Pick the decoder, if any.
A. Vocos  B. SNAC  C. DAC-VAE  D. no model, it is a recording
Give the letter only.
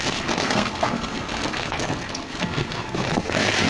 B